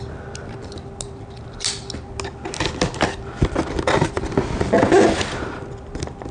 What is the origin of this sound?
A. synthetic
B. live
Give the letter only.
B